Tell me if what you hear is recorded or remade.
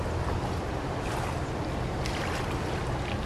recorded